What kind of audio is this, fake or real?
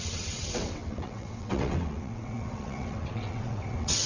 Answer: fake